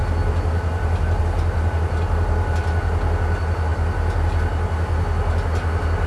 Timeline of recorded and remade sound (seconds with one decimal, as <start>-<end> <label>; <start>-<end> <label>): 0.0-6.1 recorded